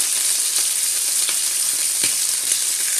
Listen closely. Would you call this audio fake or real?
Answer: real